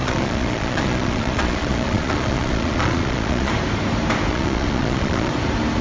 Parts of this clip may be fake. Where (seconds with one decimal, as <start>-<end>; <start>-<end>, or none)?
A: 0.0-3.5; 4.3-5.3